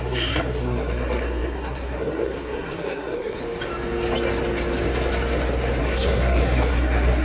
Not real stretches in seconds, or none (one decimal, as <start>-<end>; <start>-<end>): 0.0-3.4; 5.8-7.2